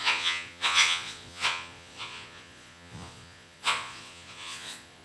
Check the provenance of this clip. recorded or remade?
remade